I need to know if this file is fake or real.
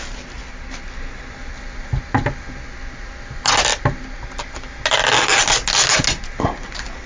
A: real